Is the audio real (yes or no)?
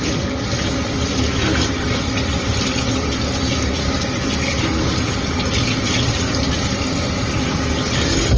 yes